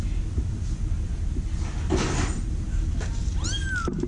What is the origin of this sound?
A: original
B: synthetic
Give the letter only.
A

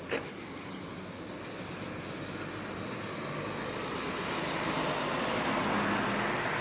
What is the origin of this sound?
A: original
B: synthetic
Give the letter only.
A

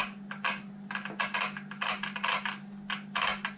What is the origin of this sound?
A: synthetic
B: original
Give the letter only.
B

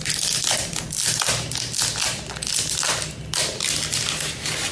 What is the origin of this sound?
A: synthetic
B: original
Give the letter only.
B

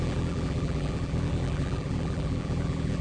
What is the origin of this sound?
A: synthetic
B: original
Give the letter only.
A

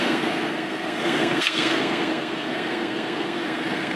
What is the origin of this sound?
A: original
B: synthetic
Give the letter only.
B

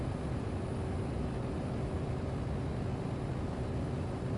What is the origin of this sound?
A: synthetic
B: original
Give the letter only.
B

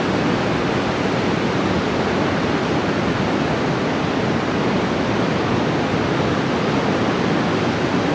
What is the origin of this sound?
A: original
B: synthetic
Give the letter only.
A